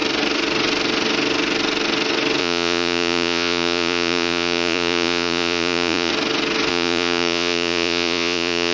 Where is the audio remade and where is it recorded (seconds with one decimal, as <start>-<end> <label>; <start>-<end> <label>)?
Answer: 0.0-2.4 recorded; 2.4-6.1 remade; 6.1-6.7 recorded; 6.7-8.7 remade